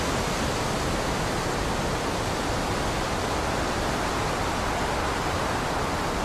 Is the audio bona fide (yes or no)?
yes